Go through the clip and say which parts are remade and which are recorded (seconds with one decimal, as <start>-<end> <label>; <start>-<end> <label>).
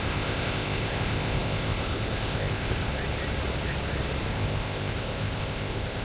0.0-2.9 remade; 2.9-4.3 recorded; 4.3-6.0 remade